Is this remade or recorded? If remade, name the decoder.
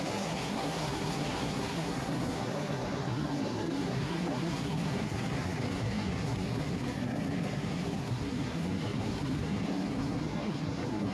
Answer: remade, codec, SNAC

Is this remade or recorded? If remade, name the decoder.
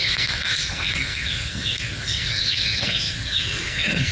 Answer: remade, codec, SNAC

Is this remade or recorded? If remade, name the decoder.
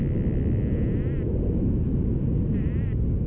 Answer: recorded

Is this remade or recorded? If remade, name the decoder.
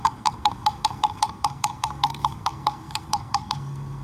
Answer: remade, codec, SNAC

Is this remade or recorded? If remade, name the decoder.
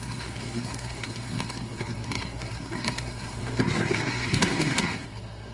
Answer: remade, codec, SNAC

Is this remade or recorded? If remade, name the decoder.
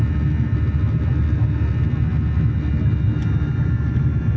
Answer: recorded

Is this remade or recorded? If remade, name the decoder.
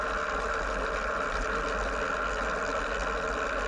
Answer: recorded